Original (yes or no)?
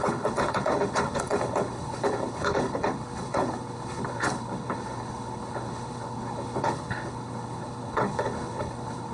no